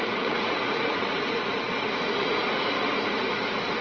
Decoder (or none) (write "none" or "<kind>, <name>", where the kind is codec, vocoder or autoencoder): vocoder, Vocos